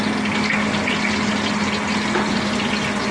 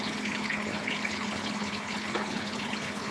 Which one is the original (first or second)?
first